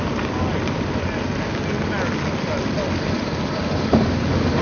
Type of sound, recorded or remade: recorded